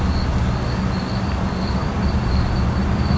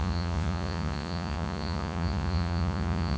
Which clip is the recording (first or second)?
first